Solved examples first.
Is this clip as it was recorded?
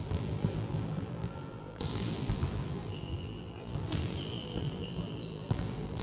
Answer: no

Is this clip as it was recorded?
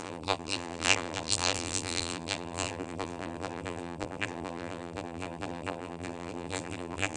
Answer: no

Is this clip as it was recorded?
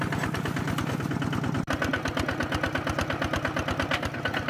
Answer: yes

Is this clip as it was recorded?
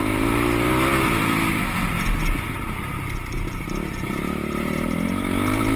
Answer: yes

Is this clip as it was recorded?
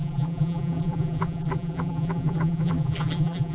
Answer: no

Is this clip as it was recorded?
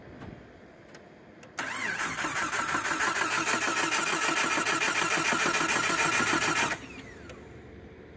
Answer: yes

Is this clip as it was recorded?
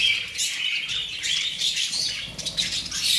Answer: no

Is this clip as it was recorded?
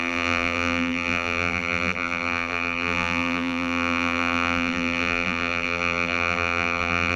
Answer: no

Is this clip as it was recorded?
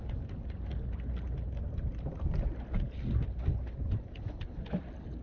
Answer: yes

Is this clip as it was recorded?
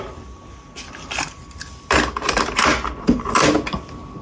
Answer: yes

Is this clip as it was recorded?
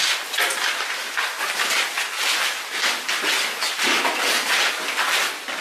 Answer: yes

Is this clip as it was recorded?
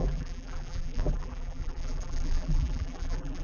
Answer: no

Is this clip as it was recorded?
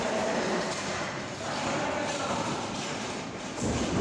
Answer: no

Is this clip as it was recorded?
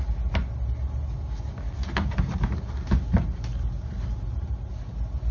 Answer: yes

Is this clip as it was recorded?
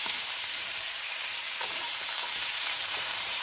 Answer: no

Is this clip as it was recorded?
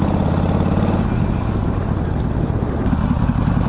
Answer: no